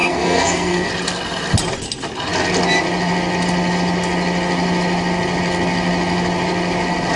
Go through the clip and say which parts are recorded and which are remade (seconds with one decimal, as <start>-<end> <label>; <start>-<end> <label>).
0.0-0.9 remade; 0.9-7.2 recorded